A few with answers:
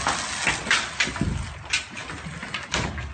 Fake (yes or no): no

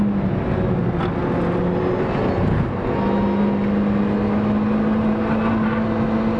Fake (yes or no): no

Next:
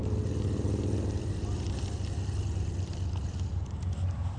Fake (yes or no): no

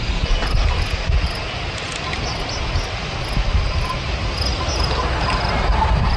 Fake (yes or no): no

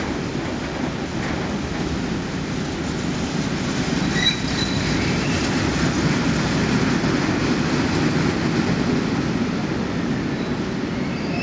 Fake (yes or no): no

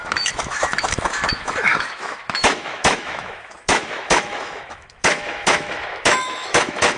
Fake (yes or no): yes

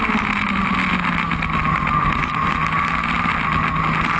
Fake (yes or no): no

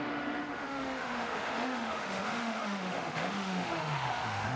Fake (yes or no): yes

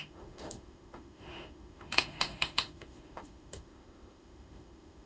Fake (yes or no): yes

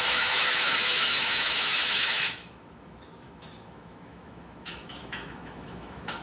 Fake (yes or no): yes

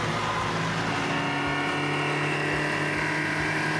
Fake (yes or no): no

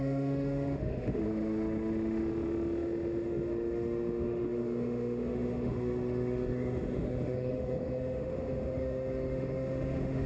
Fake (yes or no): yes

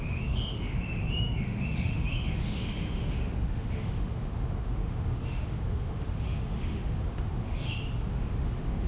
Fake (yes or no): yes